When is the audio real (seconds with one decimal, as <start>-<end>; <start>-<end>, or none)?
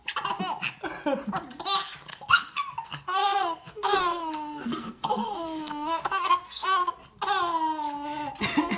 0.0-2.1; 6.9-8.8